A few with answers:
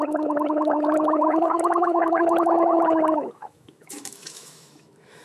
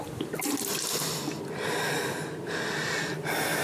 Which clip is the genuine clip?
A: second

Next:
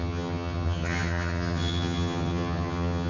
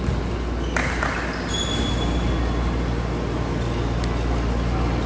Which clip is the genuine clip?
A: second